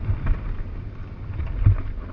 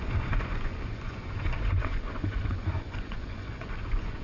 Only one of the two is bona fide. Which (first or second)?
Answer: first